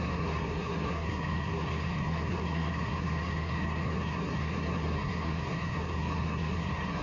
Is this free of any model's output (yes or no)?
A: no